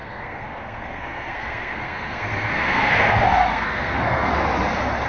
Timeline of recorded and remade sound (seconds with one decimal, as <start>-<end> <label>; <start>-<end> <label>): 0.0-4.3 remade; 4.3-5.1 recorded